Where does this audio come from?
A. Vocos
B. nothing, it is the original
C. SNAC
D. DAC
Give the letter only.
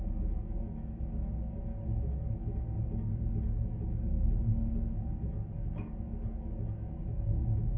B